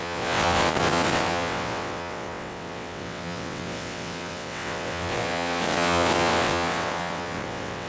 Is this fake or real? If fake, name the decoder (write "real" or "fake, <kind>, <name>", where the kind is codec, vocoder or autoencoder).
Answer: fake, vocoder, WaveNeXt